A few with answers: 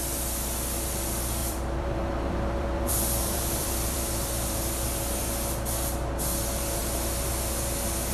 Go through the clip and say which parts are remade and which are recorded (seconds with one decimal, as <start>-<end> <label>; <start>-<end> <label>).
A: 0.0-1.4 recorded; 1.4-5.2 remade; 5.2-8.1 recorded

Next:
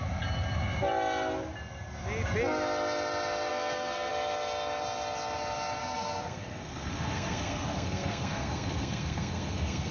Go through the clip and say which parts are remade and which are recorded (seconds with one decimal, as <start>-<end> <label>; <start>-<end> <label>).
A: 0.0-3.5 recorded; 3.5-4.1 remade; 4.1-5.8 recorded; 5.8-9.9 remade

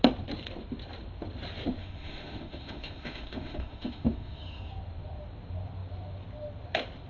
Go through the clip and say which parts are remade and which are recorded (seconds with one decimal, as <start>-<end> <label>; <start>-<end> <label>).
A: 0.0-1.8 recorded; 1.8-4.7 remade; 4.7-7.1 recorded